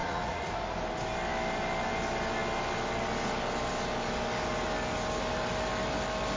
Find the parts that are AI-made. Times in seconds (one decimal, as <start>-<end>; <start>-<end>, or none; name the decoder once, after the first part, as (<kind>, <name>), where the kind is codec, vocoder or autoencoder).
0.0-0.5 (vocoder, Vocos)